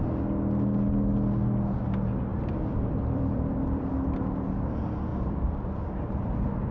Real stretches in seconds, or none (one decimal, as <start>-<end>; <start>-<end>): 0.0-2.3; 3.9-5.1; 6.0-6.7